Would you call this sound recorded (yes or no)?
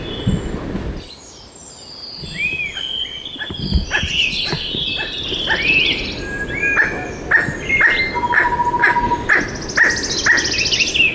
yes